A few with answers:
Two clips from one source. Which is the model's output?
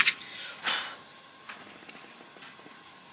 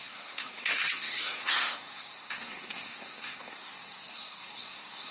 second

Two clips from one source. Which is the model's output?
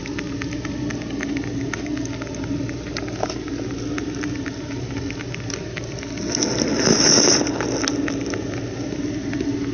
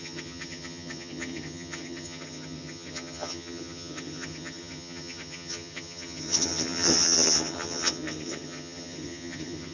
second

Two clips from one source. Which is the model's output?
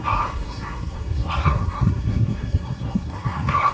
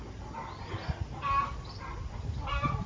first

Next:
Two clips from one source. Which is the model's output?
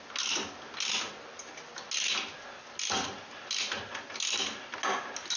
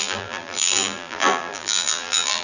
second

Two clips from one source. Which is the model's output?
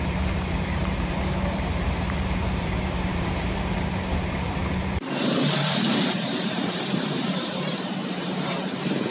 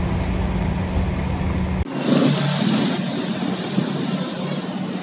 first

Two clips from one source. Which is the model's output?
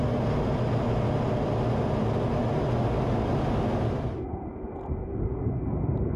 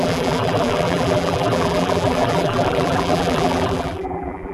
second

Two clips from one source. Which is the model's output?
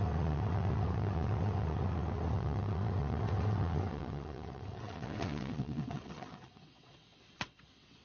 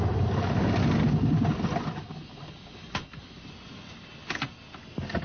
first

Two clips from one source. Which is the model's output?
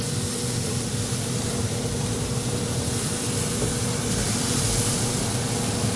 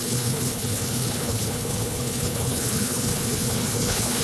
second